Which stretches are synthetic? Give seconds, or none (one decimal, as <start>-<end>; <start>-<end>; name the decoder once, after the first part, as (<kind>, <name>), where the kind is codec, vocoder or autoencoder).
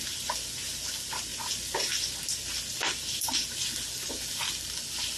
none